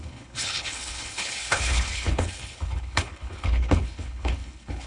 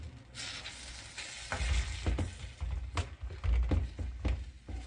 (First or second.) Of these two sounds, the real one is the second